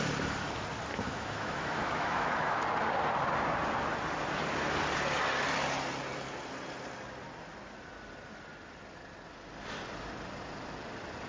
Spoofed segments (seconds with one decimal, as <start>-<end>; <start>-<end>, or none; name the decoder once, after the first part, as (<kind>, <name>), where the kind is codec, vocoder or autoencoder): 0.9-2.6 (autoencoder, DAC-VAE)